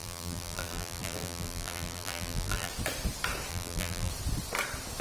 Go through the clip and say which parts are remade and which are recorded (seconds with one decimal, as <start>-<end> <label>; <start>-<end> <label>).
0.0-2.7 remade; 2.7-3.5 recorded; 3.5-4.1 remade; 4.1-5.0 recorded

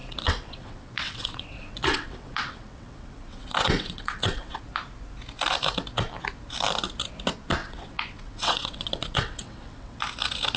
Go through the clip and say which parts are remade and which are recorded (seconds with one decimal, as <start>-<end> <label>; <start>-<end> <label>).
0.0-4.6 remade; 4.6-7.6 recorded; 7.6-10.0 remade; 10.0-10.6 recorded

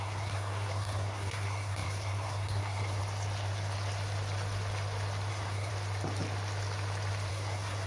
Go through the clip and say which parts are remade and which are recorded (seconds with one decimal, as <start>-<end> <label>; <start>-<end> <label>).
0.0-3.0 remade; 3.0-5.3 recorded; 5.3-5.7 remade; 5.7-7.3 recorded; 7.3-7.9 remade